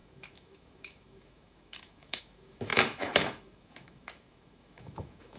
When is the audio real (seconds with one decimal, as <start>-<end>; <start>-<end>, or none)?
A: none